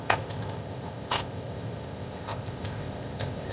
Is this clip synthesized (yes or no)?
yes